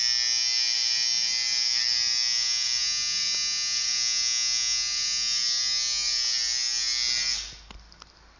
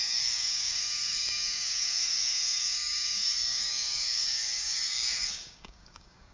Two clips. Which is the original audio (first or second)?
first